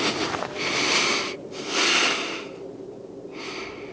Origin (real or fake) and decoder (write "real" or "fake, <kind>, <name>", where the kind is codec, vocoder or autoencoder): real